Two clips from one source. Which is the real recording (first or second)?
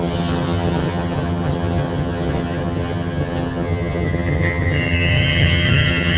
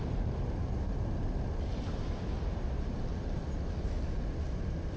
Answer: second